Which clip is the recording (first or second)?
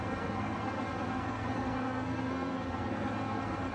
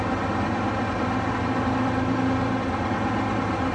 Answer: second